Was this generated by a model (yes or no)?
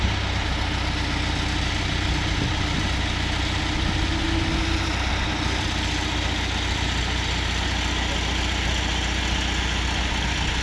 no